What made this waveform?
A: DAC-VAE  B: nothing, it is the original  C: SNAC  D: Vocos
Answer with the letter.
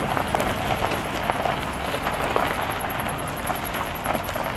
B